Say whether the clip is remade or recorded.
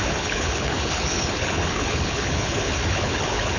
remade